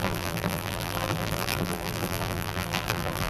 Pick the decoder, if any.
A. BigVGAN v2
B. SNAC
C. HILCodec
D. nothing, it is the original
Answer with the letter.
A